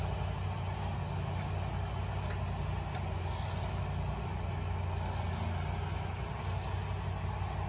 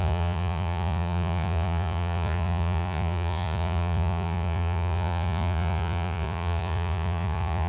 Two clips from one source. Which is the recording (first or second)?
first